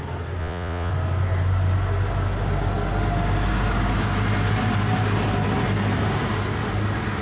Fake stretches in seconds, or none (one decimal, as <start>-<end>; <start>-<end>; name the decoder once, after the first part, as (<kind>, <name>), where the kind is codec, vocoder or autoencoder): 0.4-0.9 (vocoder, Vocos)